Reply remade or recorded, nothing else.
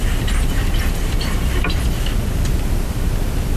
recorded